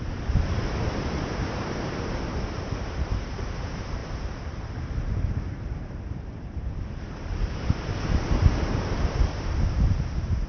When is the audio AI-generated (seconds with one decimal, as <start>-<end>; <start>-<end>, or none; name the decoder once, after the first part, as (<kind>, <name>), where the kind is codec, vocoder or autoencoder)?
0.0-10.5 (vocoder, BigVGAN v2)